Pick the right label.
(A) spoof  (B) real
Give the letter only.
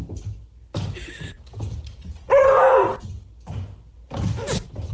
B